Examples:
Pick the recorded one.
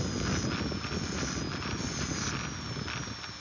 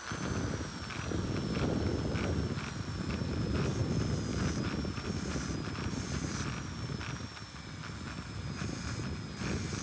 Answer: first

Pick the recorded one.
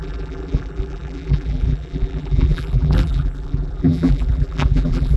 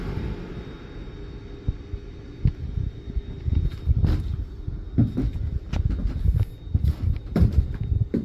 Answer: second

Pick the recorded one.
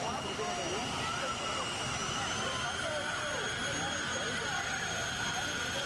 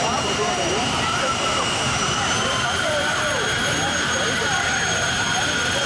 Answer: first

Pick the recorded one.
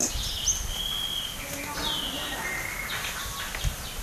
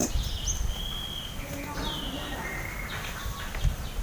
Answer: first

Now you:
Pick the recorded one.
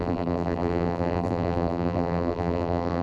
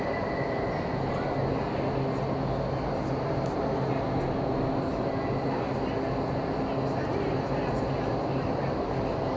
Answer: second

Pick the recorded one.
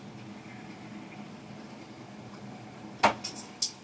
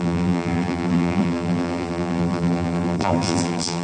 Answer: first